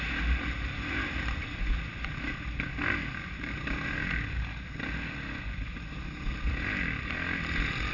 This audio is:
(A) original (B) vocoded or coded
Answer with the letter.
A